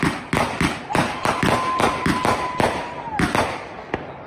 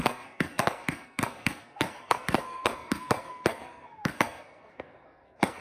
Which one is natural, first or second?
first